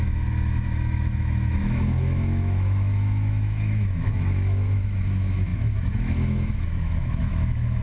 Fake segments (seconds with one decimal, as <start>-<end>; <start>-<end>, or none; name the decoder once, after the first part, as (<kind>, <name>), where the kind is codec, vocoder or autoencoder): 0.0-7.8 (autoencoder, DAC-VAE)